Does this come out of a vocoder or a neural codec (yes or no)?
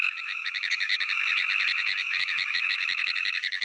yes